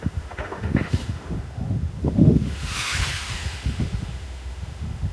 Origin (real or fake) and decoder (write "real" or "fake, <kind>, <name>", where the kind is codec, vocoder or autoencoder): fake, autoencoder, DAC-VAE